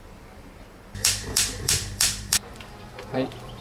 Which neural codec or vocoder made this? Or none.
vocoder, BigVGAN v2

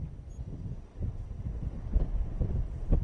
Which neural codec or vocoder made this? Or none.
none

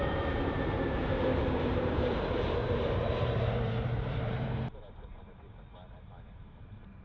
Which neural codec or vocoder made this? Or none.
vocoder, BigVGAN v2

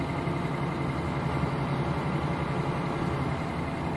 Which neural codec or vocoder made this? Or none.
none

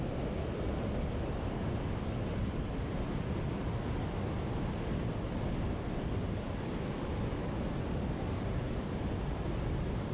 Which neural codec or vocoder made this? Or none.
none